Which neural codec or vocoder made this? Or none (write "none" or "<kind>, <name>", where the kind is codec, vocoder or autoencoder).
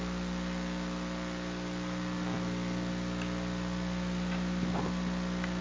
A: none